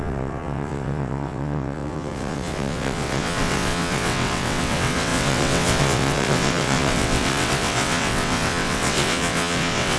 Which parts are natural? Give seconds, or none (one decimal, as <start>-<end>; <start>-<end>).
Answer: none